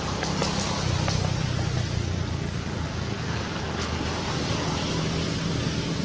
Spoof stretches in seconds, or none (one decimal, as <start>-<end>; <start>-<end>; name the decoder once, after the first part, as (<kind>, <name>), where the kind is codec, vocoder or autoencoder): 0.0-0.4 (vocoder, BigVGAN v2); 4.0-6.0